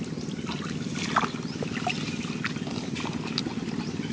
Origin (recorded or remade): recorded